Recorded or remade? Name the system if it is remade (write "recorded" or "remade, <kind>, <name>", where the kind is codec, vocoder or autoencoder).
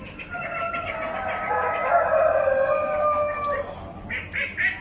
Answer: recorded